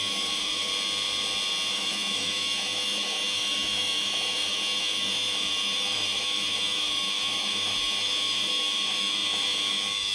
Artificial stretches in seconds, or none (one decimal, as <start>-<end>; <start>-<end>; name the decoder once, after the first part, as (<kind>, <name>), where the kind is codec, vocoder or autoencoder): 0.0-0.7 (autoencoder, DAC-VAE); 1.7-10.1